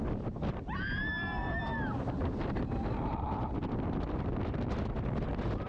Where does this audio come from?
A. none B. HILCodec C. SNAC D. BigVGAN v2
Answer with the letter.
A